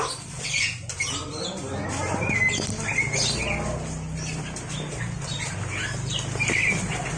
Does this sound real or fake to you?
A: real